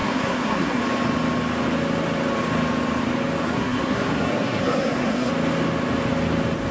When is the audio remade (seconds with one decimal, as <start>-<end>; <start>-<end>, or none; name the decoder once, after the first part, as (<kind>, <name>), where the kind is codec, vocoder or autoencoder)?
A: 0.0-0.8 (codec, SNAC); 3.4-5.3